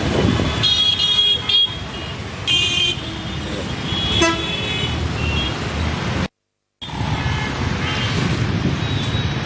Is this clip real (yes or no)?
yes